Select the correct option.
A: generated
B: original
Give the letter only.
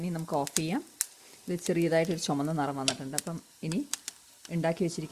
B